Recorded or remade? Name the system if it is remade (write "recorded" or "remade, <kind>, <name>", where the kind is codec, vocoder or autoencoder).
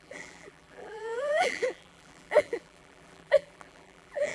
remade, vocoder, BigVGAN v2